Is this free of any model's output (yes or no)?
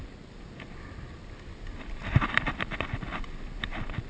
yes